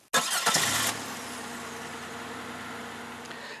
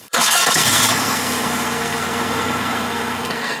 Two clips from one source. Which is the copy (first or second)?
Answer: second